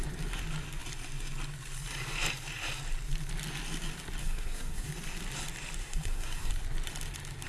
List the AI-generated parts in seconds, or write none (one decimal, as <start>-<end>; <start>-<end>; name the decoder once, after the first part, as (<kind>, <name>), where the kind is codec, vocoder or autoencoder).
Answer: 4.2-4.9 (codec, SNAC); 5.8-6.5